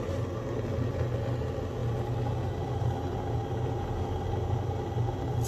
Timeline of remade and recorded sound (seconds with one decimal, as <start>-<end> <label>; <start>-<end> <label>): 0.0-5.5 recorded